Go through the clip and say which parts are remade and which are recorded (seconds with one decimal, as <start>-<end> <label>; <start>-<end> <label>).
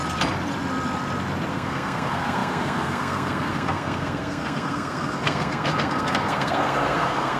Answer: 0.0-1.5 recorded; 1.5-7.4 remade